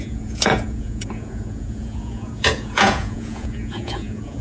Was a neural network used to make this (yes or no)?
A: yes